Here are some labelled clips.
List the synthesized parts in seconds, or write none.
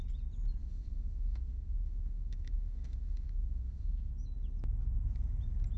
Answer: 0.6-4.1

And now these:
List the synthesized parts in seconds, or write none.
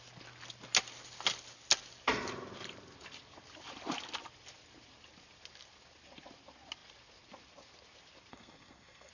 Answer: 8.3-9.1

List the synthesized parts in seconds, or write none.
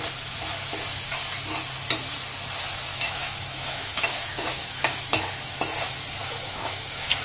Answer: 2.9-5.3; 6.2-7.2